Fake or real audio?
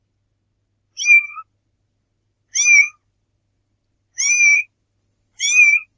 real